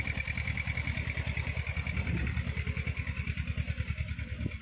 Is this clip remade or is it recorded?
recorded